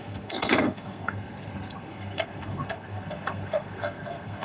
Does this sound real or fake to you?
fake